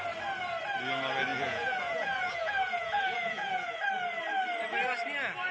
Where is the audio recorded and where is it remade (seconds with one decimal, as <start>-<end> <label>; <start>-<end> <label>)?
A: 0.0-1.3 recorded; 1.3-3.8 remade; 3.8-5.5 recorded